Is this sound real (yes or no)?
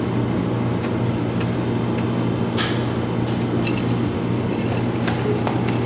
yes